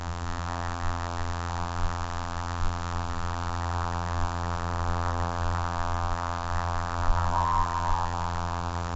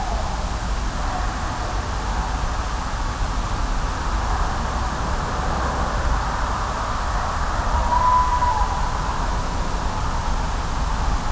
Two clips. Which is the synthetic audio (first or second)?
first